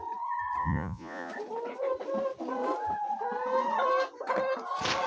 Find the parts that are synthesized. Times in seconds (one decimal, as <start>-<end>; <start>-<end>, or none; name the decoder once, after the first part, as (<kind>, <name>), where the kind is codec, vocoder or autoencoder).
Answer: 0.6-1.3 (vocoder, Vocos)